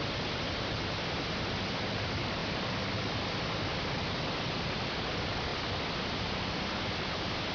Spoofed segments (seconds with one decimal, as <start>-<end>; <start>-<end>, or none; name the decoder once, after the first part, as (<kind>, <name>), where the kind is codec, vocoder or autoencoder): none

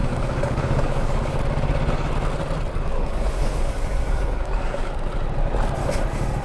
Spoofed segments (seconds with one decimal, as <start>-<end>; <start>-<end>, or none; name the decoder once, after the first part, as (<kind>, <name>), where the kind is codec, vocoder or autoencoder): 0.0-1.4 (codec, DAC); 2.9-4.9

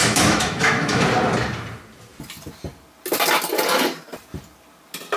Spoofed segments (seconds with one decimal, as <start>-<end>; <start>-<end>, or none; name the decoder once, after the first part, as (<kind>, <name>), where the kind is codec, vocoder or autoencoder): 0.0-1.0 (autoencoder, DAC-VAE)

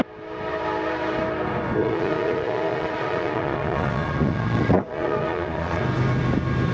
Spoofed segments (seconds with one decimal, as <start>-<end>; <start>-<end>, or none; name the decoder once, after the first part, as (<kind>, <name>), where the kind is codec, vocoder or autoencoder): 1.8-5.8 (vocoder, Vocos)

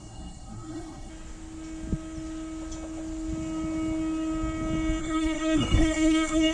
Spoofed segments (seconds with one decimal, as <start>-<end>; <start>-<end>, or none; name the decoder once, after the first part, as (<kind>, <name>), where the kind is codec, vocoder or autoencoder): 0.0-1.1 (codec, SNAC); 5.0-6.5